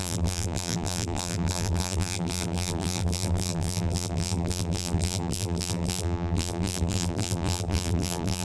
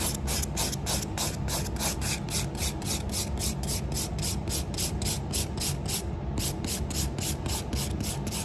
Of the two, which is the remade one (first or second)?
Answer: first